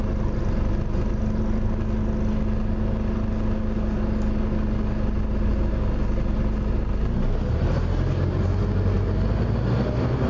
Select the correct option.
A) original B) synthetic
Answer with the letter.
A